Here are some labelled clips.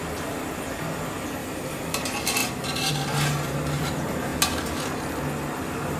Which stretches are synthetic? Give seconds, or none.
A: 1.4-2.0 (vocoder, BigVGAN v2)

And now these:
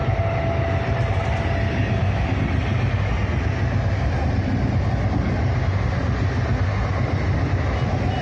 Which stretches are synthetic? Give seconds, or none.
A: none

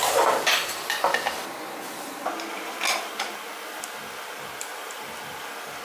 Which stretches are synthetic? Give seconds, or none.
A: 0.0-1.1 (vocoder, BigVGAN v2); 2.5-5.8

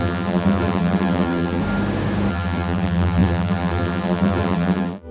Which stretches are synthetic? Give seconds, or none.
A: 0.0-1.6 (vocoder, BigVGAN v2); 2.3-5.1

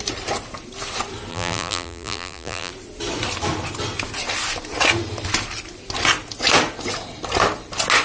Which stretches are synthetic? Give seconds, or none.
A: 1.3-2.7 (vocoder, BigVGAN v2)

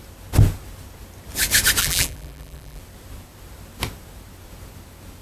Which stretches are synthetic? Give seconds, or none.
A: 1.8-2.8 (vocoder, BigVGAN v2)

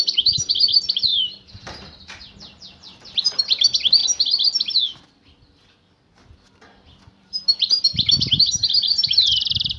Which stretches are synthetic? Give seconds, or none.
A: 0.0-4.0 (vocoder, BigVGAN v2); 7.0-9.8

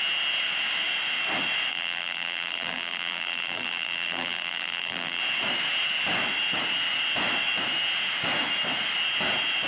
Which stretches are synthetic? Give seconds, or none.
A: 1.7-5.2 (vocoder, BigVGAN v2)